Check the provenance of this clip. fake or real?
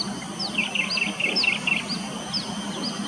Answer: real